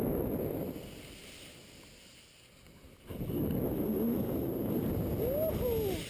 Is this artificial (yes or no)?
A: no